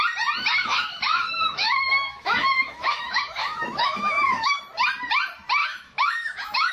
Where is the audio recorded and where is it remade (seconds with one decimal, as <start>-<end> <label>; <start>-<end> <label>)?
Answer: 0.0-0.6 recorded; 0.6-4.6 remade; 4.6-5.6 recorded; 5.6-6.7 remade

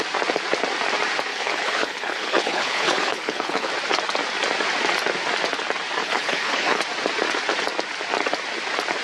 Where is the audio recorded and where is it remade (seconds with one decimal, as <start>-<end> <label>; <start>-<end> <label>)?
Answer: 0.0-1.3 recorded; 1.3-3.7 remade; 3.7-6.0 recorded; 6.0-6.8 remade; 6.8-9.0 recorded

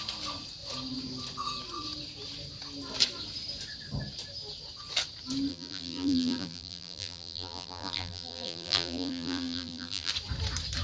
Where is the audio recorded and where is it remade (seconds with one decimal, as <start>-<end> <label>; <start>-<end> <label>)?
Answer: 0.0-5.5 recorded; 5.5-10.1 remade; 10.1-10.8 recorded

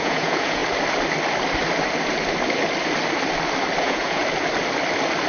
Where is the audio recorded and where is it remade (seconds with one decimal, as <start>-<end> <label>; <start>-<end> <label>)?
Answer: 0.0-0.6 remade; 0.6-3.8 recorded; 3.8-4.2 remade; 4.2-5.3 recorded